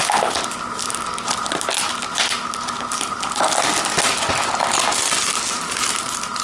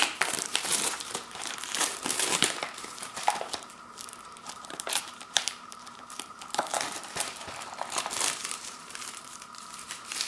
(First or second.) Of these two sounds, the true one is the first